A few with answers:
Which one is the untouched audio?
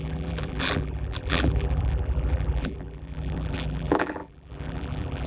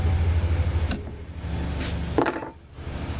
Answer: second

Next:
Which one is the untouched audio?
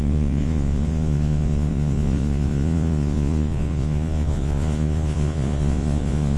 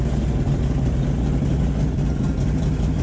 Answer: second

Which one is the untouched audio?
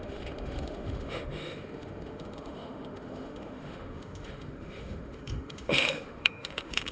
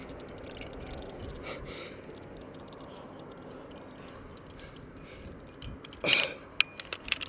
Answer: second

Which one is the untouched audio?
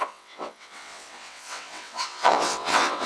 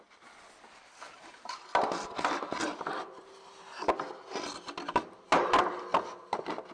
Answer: second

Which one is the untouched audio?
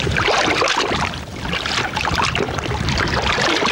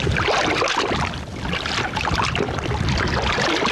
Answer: second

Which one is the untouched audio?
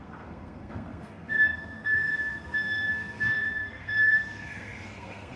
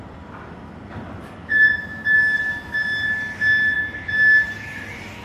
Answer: second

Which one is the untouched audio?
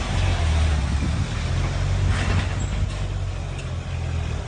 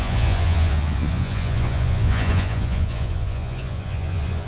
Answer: first